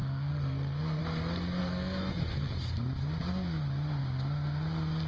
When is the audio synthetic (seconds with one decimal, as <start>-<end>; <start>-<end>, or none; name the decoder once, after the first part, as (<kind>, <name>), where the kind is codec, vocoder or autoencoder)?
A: 0.0-1.0 (codec, SNAC); 1.6-2.5